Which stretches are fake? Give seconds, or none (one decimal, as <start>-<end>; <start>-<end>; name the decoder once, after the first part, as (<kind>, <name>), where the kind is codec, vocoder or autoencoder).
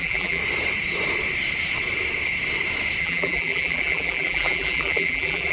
0.0-0.4 (vocoder, BigVGAN v2); 3.0-5.5